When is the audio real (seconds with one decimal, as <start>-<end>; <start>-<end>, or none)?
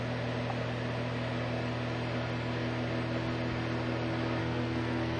0.0-4.4